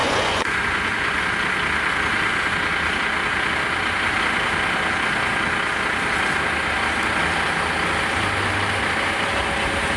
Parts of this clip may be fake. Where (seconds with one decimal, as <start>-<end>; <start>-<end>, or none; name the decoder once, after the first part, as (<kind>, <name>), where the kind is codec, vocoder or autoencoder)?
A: 0.0-1.2 (vocoder, Vocos)